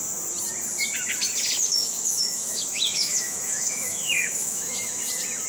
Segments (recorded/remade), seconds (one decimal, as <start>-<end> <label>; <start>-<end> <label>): 0.0-1.7 recorded; 1.7-5.0 remade; 5.0-5.5 recorded